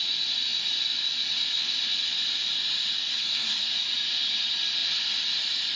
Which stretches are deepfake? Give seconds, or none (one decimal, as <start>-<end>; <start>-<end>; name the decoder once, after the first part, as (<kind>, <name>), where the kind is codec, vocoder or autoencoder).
3.1-3.7 (codec, SNAC)